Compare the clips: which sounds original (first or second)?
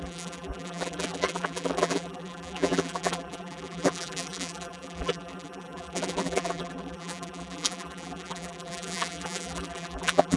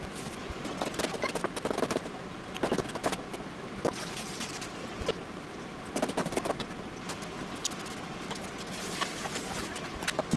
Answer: second